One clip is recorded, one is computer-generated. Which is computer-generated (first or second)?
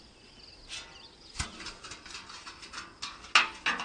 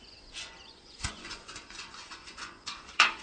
second